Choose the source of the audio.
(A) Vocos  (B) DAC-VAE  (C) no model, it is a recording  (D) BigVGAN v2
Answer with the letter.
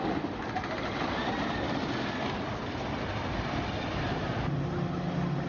C